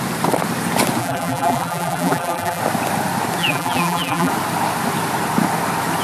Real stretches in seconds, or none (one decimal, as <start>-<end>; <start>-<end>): 0.0-1.0; 2.6-3.4; 4.3-6.0

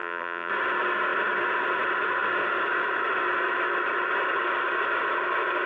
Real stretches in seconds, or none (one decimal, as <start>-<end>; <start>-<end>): 0.5-5.7